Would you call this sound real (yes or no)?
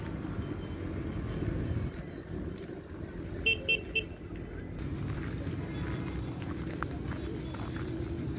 yes